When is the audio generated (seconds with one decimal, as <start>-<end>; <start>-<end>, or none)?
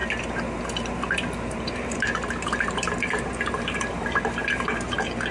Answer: 0.6-5.3